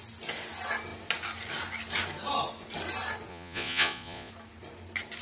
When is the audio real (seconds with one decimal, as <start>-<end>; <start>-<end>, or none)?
0.0-3.3; 4.3-5.2